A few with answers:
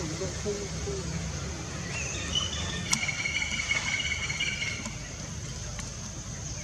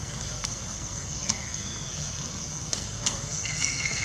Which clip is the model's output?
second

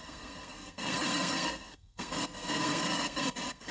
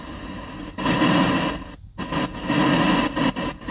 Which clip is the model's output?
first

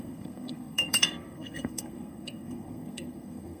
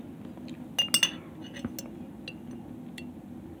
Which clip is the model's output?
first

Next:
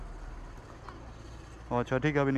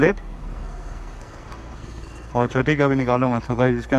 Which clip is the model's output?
second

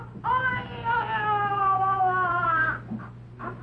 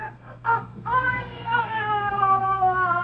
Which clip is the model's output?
second